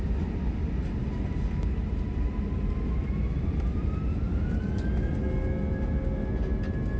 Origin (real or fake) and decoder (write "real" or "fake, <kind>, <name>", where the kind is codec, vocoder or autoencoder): real